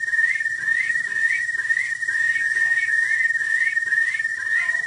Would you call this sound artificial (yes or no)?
no